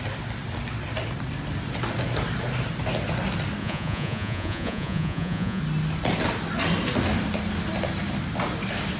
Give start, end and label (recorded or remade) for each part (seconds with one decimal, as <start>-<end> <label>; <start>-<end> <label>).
0.0-3.6 recorded; 3.6-5.6 remade; 5.6-9.0 recorded